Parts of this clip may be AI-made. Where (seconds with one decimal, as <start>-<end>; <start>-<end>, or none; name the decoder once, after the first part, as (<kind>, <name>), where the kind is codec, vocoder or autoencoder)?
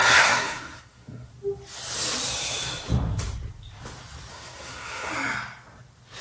0.0-1.3 (codec, SNAC); 4.3-5.1